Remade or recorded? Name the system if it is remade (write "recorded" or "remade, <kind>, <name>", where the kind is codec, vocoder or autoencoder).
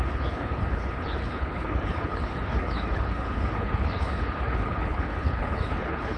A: remade, codec, HILCodec